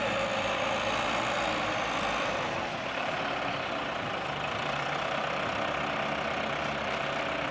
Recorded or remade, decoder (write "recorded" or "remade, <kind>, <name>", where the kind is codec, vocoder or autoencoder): remade, vocoder, BigVGAN v2